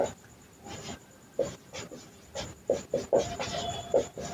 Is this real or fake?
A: real